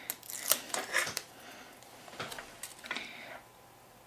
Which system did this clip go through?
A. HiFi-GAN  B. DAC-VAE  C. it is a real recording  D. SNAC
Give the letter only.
C